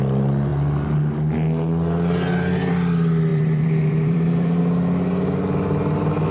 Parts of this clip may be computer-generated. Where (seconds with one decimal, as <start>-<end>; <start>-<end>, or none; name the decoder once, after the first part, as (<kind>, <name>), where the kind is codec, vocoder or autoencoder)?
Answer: 3.3-4.6 (vocoder, BigVGAN v2)